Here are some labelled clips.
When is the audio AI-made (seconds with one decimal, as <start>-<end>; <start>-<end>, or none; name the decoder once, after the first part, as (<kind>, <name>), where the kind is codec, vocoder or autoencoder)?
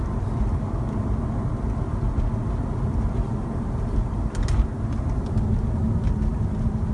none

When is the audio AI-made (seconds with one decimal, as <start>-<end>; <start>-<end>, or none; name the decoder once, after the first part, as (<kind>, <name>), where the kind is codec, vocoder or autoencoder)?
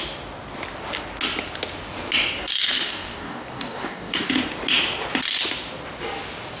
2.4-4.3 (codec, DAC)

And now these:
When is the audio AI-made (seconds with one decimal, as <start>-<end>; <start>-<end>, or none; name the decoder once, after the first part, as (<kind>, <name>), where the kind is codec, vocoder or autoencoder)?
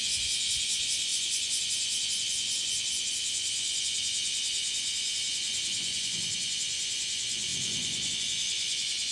0.0-9.1 (vocoder, Vocos)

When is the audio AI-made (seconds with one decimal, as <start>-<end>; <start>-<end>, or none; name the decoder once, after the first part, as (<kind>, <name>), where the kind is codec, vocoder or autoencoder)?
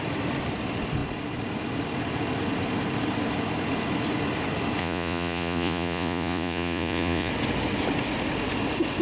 4.8-7.3 (vocoder, Vocos)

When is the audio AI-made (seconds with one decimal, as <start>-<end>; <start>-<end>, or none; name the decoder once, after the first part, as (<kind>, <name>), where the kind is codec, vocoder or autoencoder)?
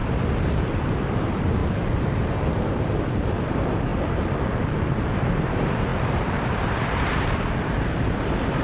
0.9-8.6 (vocoder, BigVGAN v2)